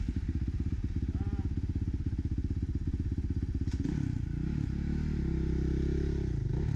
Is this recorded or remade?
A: recorded